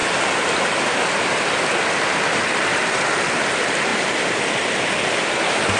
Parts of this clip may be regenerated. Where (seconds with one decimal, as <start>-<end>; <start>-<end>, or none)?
none